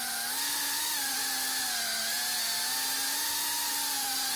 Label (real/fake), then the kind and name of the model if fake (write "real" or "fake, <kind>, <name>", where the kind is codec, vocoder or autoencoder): real